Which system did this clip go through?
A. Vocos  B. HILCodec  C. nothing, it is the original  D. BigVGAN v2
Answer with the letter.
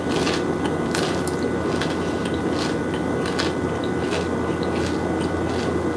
C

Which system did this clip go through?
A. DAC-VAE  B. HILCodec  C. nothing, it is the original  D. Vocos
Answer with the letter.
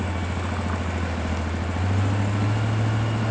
C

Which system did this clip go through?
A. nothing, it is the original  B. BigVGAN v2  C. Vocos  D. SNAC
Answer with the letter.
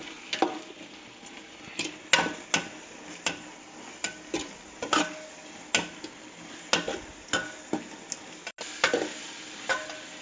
A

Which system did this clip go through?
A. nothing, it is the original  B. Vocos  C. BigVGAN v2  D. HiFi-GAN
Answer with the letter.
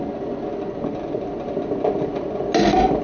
A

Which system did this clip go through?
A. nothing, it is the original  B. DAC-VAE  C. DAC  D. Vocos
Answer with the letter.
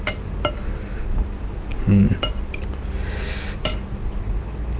A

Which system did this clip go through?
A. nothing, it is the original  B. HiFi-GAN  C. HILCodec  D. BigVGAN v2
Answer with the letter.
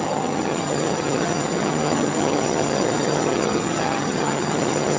B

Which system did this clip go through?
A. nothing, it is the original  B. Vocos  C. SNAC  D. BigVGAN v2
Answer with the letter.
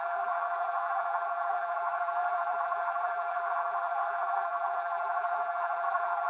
D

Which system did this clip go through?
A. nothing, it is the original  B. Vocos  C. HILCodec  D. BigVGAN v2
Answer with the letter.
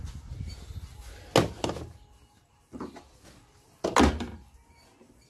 A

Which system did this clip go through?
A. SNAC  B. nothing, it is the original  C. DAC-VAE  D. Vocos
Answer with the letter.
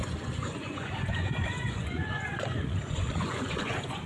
D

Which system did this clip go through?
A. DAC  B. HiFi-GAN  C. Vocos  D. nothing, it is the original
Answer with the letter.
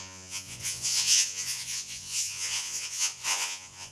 C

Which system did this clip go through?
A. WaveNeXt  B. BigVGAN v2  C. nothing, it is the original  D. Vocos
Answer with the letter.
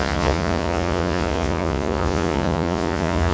D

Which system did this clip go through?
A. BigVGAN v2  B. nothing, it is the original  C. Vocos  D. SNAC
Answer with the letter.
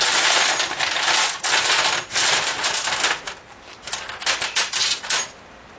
B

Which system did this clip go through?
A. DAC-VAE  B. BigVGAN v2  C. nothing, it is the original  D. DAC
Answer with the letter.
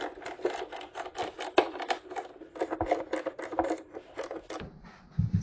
C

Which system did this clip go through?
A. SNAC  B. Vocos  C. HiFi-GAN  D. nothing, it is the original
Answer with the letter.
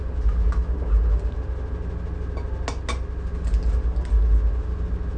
D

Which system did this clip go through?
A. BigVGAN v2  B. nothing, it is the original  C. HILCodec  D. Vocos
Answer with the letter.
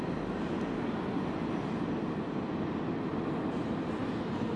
B